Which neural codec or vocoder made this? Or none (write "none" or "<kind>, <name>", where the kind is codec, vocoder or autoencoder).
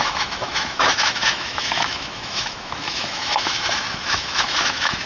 autoencoder, DAC-VAE